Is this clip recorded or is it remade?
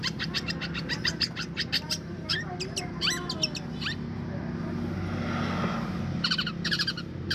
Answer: recorded